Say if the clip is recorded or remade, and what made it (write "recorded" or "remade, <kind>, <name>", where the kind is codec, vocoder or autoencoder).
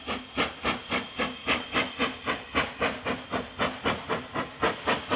recorded